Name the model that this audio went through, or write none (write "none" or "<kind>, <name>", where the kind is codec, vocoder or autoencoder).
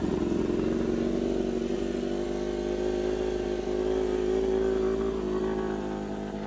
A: none